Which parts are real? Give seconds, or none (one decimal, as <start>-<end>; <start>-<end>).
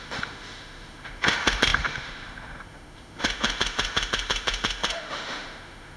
none